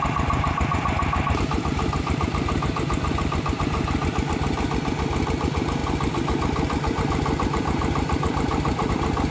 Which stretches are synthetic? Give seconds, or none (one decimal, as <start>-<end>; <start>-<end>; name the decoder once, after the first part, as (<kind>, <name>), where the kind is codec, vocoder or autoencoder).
none

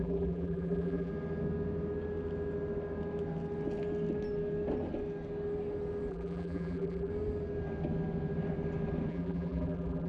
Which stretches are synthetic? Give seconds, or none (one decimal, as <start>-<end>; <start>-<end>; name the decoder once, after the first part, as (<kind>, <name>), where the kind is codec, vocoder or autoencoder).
0.0-1.1 (vocoder, BigVGAN v2); 6.1-7.1; 9.1-10.1

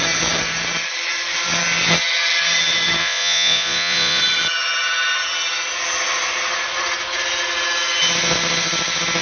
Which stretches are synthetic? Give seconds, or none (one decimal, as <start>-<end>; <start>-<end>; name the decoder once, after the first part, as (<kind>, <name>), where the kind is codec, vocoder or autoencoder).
3.0-4.2 (vocoder, Vocos)

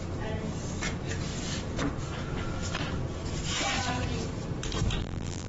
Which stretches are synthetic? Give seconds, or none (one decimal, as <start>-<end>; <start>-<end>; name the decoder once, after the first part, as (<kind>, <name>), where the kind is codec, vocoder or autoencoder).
5.0-5.5 (vocoder, BigVGAN v2)

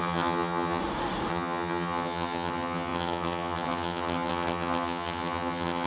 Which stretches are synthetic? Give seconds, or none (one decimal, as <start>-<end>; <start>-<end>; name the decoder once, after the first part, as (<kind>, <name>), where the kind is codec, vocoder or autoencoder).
0.0-0.8 (vocoder, HiFi-GAN); 1.3-5.9

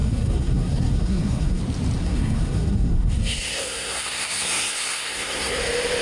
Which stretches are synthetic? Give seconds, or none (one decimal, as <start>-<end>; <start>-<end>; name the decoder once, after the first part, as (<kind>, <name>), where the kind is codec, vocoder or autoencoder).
0.0-1.6 (codec, SNAC); 2.0-5.6